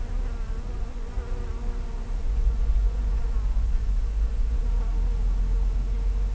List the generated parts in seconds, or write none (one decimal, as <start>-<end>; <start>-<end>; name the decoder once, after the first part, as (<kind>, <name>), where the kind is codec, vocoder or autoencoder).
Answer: 0.6-1.1 (vocoder, Vocos); 2.2-4.6